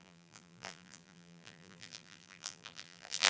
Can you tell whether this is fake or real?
fake